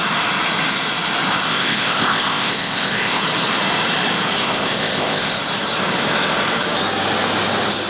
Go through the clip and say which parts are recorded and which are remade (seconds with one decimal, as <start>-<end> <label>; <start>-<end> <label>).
0.0-1.5 recorded; 1.5-3.2 remade; 3.2-4.4 recorded; 4.4-5.4 remade; 5.4-7.9 recorded